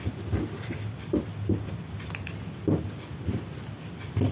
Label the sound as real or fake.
real